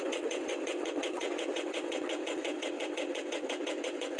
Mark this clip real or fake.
fake